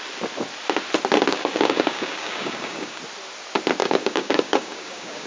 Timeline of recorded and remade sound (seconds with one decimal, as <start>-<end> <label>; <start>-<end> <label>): 0.0-1.3 recorded; 1.3-3.0 remade; 3.0-3.8 recorded; 3.8-5.3 remade